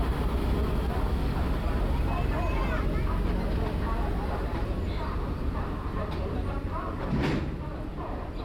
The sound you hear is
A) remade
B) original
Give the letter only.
B